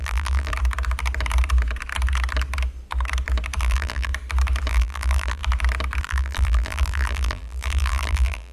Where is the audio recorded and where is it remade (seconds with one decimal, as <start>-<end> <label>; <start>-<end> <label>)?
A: 0.0-0.5 remade; 0.5-3.6 recorded; 3.6-4.1 remade; 4.1-4.7 recorded; 4.7-5.4 remade; 5.4-6.0 recorded; 6.0-8.5 remade